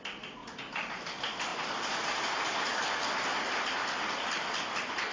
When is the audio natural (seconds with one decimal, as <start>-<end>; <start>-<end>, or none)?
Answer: 0.0-0.4; 0.9-1.5; 2.8-5.1